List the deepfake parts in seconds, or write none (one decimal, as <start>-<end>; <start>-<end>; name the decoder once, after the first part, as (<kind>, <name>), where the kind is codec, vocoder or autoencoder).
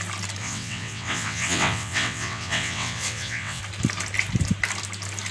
0.4-3.6 (vocoder, WaveNeXt)